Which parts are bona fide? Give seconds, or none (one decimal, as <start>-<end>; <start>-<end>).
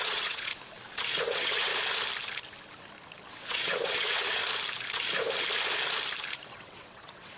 0.5-1.2; 1.7-3.5; 4.4-6.5